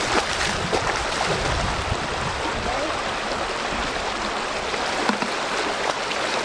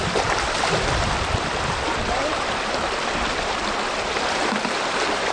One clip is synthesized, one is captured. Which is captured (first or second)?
first